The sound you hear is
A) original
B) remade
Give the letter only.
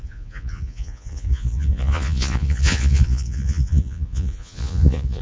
B